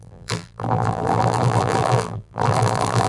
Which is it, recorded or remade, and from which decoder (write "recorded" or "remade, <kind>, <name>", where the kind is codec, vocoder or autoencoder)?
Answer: remade, vocoder, BigVGAN v2